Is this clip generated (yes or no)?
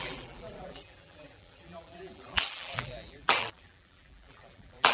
yes